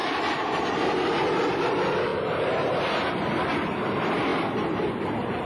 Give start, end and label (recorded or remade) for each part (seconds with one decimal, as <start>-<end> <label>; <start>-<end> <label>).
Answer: 0.0-1.0 remade; 1.0-5.5 recorded